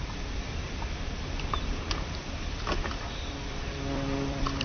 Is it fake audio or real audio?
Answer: fake